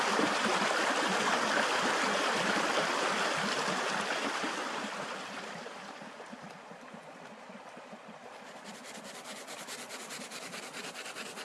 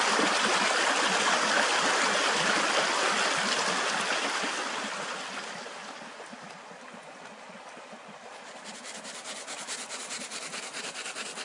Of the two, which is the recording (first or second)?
second